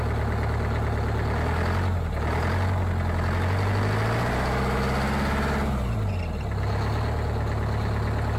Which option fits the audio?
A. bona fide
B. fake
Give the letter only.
A